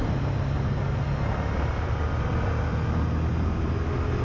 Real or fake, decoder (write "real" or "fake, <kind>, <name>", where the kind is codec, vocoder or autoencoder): real